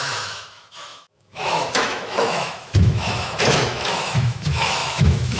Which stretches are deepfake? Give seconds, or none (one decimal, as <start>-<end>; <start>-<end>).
0.0-5.4

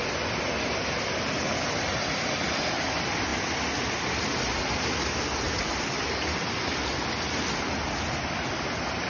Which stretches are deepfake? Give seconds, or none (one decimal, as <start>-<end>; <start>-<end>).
none

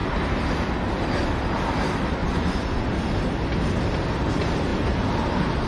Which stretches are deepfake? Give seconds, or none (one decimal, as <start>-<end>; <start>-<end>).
2.2-2.9

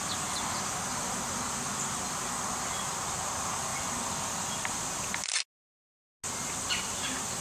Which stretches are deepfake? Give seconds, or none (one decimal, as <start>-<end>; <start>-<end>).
none